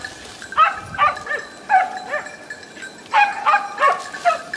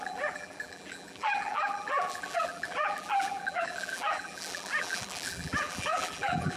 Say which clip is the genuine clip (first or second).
first